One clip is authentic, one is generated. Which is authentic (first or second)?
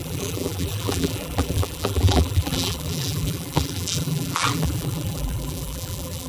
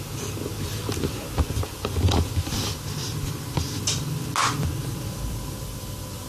second